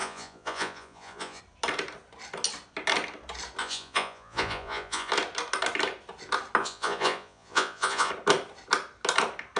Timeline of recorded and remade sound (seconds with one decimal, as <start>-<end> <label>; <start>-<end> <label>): 0.0-1.4 remade; 1.4-3.6 recorded; 3.6-5.1 remade; 5.1-6.6 recorded; 6.6-8.1 remade; 8.1-9.6 recorded